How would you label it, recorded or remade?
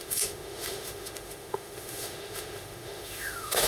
remade